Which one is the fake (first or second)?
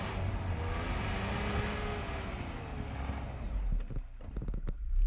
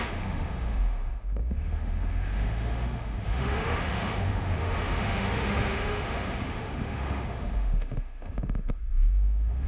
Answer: second